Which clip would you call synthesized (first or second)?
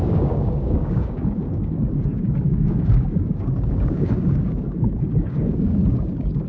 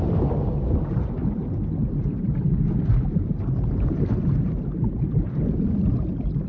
first